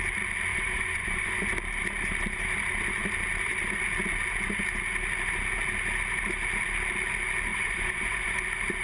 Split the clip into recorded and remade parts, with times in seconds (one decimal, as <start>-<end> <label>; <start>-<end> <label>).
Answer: 0.0-0.5 recorded; 0.5-1.4 remade; 1.4-7.5 recorded; 7.5-8.4 remade; 8.4-8.8 recorded